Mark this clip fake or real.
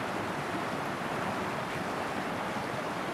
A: real